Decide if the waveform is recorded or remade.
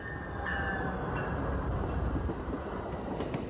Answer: recorded